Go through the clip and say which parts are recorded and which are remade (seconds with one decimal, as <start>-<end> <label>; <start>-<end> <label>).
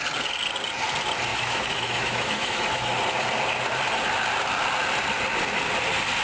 0.0-1.3 recorded; 1.3-3.0 remade; 3.0-6.2 recorded